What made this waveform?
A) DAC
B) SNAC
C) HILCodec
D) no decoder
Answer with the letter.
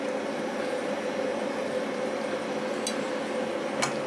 D